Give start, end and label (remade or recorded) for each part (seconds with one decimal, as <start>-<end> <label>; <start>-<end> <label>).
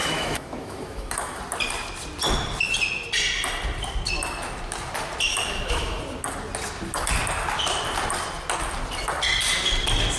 0.0-1.4 remade; 1.4-5.3 recorded; 5.3-6.0 remade; 6.0-10.2 recorded